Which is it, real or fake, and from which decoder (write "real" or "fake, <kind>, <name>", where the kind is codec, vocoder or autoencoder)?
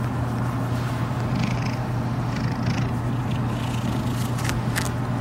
real